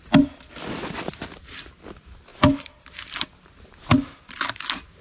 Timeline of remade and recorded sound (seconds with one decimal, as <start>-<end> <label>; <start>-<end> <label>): 0.0-5.0 recorded